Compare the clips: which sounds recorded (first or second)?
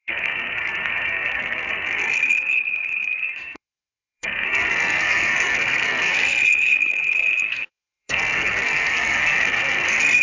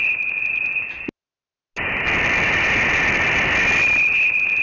second